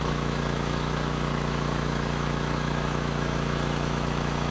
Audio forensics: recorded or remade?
remade